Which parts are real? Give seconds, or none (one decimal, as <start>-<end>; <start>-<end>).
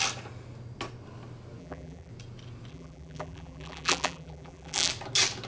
0.0-1.6; 2.1-2.7; 4.9-5.5